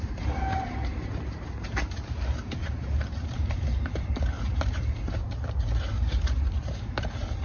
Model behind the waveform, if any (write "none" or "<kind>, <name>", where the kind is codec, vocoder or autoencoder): vocoder, BigVGAN v2